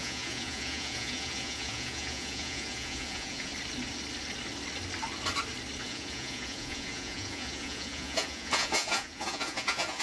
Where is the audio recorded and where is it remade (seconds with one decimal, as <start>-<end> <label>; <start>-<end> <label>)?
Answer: 0.0-3.5 remade; 3.5-5.8 recorded; 5.8-10.0 remade